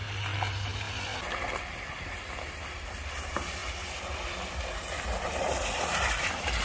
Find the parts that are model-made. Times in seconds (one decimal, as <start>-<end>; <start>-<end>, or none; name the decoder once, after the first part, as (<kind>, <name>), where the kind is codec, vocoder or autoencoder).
2.9-6.6 (vocoder, BigVGAN v2)